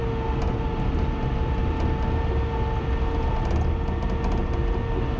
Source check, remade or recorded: recorded